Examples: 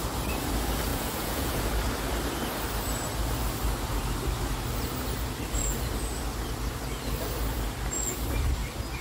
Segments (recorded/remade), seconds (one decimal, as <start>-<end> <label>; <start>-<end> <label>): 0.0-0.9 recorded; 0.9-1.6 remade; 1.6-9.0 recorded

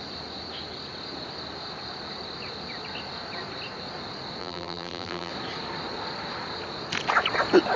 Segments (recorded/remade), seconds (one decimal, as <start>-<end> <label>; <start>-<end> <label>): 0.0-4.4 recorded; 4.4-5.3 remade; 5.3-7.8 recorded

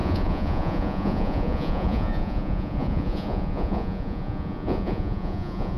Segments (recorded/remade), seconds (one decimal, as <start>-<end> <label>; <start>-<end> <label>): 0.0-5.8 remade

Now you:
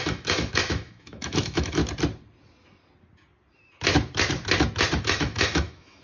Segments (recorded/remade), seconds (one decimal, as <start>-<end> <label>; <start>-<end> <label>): 0.0-1.8 remade; 1.8-5.0 recorded; 5.0-6.0 remade

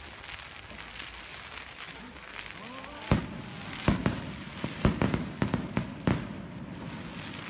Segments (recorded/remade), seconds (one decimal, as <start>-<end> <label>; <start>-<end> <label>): 0.0-7.5 recorded